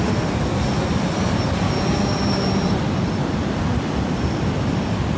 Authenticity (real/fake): real